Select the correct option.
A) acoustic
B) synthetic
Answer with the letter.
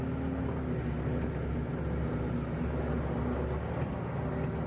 A